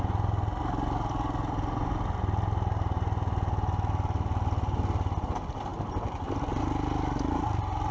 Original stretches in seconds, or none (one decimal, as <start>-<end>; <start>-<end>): 0.0-7.9